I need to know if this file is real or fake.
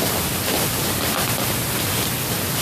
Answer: real